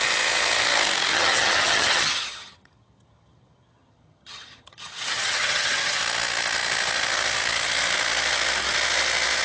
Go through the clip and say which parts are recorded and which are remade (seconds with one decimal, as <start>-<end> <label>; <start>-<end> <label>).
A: 0.0-1.1 recorded; 1.1-6.0 remade; 6.0-9.4 recorded